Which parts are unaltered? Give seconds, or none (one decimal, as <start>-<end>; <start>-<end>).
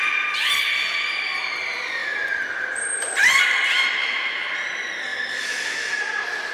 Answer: 0.0-4.0; 4.5-5.1; 6.0-6.5